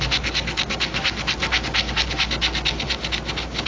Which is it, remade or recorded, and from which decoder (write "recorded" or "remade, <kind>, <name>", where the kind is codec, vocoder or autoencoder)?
recorded